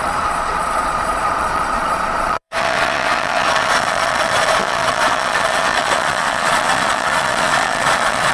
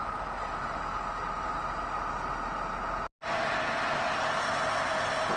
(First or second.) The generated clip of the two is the first